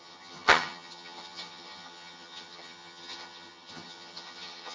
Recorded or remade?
remade